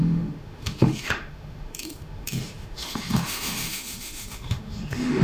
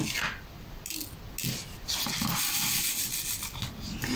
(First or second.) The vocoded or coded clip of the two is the first